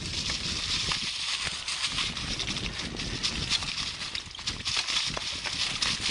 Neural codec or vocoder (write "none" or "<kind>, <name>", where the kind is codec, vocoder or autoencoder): none